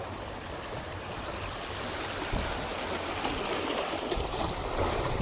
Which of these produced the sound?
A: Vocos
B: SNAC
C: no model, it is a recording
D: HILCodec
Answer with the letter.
C